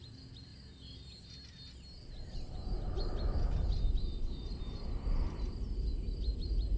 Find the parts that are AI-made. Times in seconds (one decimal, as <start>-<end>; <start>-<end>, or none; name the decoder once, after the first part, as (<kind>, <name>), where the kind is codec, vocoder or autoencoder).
none